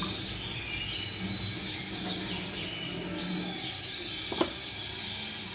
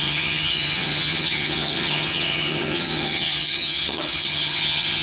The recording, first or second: first